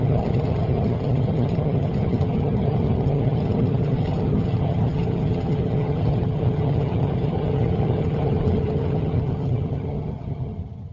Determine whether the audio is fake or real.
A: fake